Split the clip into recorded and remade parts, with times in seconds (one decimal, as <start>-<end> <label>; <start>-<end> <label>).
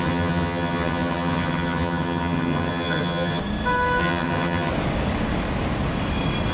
0.0-3.4 remade; 3.4-4.0 recorded; 4.0-4.7 remade; 4.7-6.5 recorded